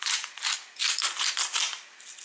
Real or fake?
real